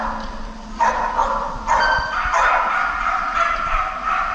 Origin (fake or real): real